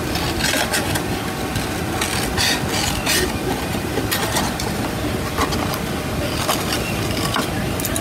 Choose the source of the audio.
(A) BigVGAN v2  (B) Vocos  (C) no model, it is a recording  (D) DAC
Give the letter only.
C